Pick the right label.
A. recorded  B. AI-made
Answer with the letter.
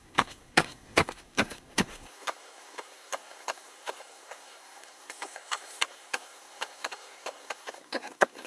B